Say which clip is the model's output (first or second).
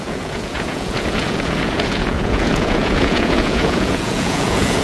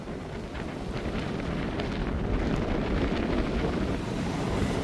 first